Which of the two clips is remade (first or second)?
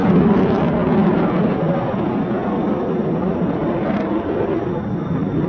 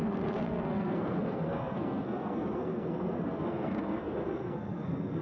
second